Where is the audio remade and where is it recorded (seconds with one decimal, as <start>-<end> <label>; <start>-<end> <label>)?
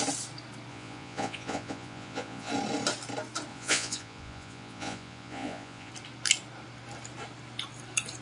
0.0-0.7 recorded; 0.7-2.5 remade; 2.5-3.5 recorded; 3.5-5.9 remade; 5.9-8.2 recorded